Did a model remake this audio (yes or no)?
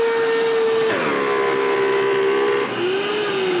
no